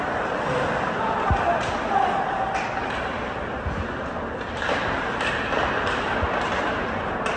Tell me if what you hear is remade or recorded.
recorded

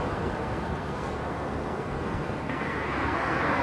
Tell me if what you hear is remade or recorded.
remade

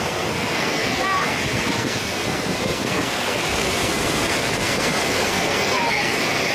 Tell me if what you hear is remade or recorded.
remade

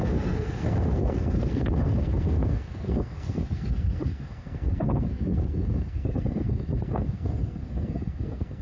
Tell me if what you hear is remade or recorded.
remade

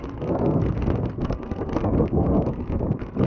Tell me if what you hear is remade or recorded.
remade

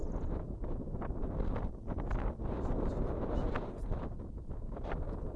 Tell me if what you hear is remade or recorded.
recorded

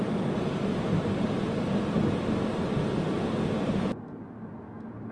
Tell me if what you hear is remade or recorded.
recorded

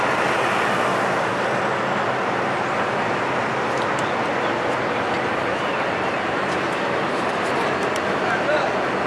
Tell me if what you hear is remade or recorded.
recorded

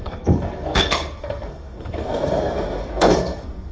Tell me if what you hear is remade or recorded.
remade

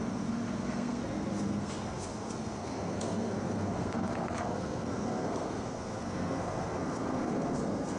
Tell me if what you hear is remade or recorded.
remade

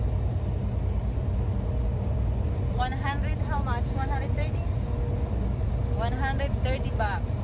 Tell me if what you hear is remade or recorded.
recorded